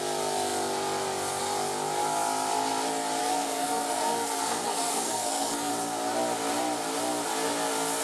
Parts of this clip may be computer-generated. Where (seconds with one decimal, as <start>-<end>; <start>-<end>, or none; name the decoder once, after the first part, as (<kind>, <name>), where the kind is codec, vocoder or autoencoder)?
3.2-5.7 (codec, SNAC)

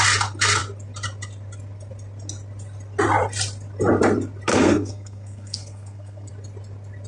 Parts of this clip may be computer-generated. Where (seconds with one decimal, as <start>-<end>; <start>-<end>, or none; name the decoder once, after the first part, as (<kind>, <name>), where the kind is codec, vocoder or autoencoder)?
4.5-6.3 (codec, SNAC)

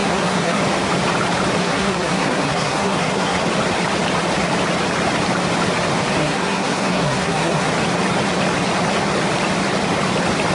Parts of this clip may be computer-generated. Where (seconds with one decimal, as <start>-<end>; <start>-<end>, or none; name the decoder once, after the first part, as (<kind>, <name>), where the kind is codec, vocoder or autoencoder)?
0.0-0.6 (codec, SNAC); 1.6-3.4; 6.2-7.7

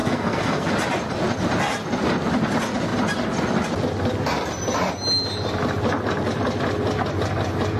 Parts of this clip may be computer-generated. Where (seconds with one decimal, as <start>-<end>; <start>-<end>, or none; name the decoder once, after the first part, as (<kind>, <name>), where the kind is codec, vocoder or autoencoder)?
0.0-0.7 (codec, SNAC)